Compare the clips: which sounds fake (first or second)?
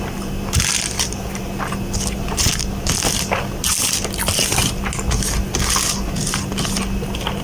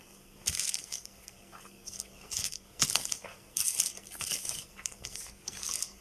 second